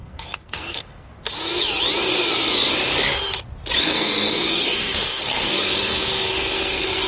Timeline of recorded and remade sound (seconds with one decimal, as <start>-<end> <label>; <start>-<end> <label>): 0.0-1.1 remade; 1.1-3.8 recorded; 3.8-7.1 remade